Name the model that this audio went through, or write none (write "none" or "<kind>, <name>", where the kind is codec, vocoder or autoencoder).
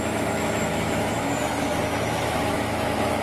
autoencoder, DAC-VAE